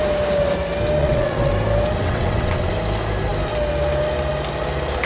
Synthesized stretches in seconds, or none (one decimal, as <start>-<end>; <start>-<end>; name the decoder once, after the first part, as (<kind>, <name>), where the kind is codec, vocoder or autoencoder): 1.0-1.5 (vocoder, WaveNeXt); 2.0-2.7